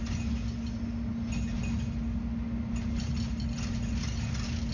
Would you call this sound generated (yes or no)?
no